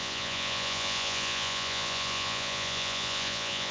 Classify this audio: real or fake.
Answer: fake